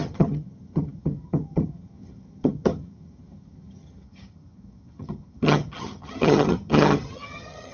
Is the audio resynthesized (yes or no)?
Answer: yes